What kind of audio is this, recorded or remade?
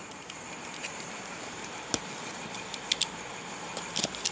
recorded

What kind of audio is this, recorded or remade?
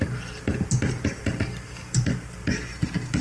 recorded